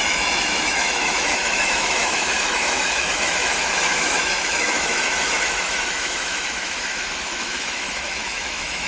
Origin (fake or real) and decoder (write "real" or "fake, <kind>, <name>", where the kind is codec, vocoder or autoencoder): fake, autoencoder, DAC-VAE